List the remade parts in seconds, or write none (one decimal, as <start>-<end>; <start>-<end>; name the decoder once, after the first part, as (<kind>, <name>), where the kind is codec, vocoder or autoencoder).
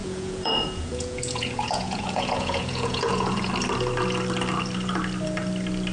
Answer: 0.0-3.5 (vocoder, Vocos)